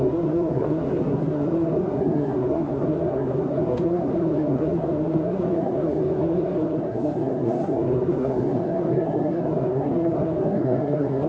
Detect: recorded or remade remade